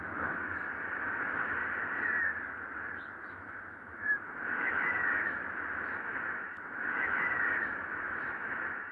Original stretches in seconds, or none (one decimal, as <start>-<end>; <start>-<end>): 1.6-3.3; 5.4-6.0